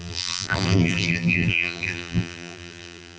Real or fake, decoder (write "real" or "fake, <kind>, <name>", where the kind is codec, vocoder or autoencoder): fake, vocoder, BigVGAN v2